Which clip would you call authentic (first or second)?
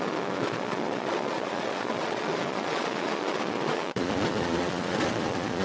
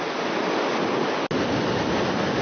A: second